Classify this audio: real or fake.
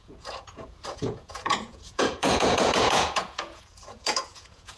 fake